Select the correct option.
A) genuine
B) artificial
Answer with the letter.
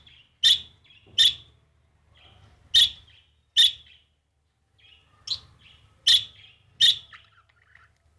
A